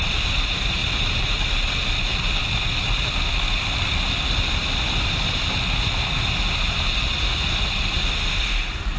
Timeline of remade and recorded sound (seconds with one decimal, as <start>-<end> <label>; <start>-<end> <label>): 0.0-9.0 recorded